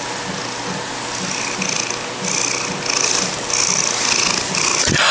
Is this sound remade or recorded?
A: recorded